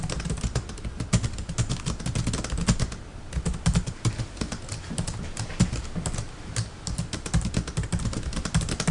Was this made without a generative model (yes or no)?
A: yes